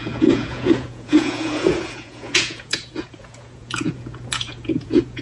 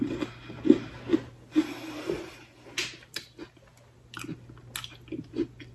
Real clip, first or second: second